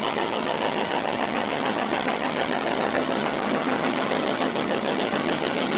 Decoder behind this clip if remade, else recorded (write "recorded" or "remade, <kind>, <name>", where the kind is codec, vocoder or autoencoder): remade, vocoder, HiFi-GAN